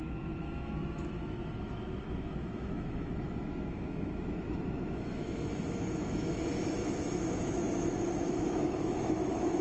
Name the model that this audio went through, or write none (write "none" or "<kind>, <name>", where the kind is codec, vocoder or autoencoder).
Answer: autoencoder, DAC-VAE